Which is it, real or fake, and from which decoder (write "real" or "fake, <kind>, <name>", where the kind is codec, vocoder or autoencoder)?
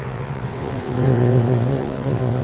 fake, vocoder, WaveNeXt